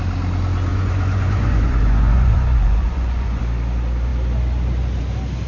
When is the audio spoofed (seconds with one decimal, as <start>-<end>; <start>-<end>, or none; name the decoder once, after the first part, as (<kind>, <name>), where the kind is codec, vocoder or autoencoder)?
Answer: 0.7-3.4 (vocoder, Vocos)